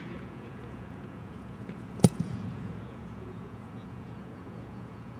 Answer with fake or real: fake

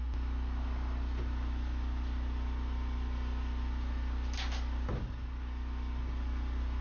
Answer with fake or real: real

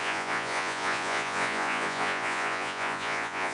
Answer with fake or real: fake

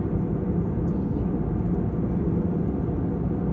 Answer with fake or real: real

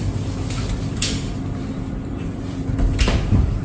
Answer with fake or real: real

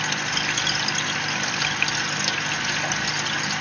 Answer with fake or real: real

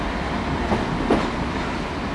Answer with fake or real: real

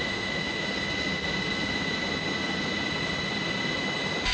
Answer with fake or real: real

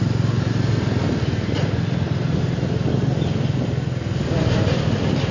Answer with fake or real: real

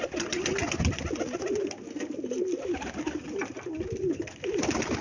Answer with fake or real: real